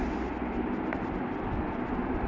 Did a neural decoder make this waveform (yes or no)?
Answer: no